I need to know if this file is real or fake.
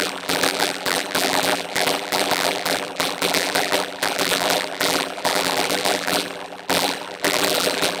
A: fake